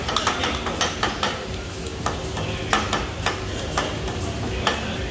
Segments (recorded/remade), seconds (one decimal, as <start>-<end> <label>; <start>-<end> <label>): 0.0-5.1 recorded